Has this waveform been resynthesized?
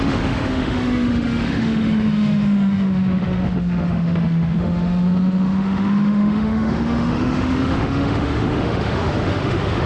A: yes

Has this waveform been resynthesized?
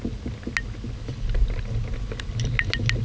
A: no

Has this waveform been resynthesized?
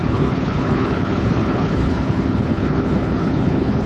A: yes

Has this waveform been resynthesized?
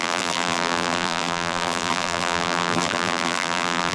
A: yes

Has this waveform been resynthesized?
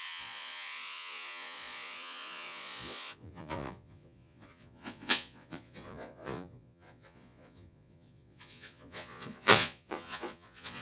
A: yes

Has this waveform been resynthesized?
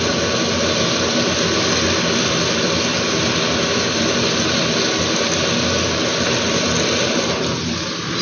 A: no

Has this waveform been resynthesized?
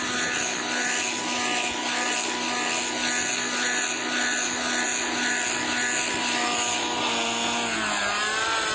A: no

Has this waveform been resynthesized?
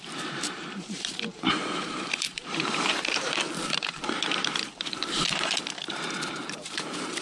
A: yes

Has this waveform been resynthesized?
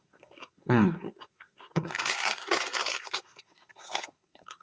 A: yes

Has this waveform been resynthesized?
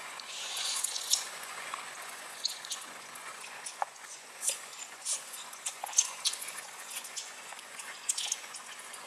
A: yes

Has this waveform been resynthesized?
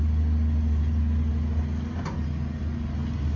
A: no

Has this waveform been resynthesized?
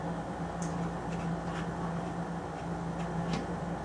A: no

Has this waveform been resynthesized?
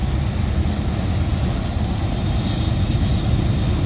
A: no